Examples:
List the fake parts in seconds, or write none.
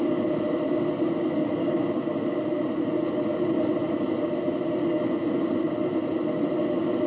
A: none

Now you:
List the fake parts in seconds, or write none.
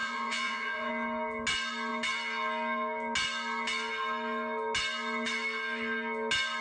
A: 0.0-0.9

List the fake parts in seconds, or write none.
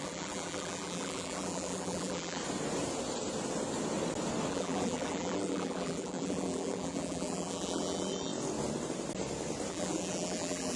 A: 0.0-2.4; 4.5-8.3; 9.7-10.8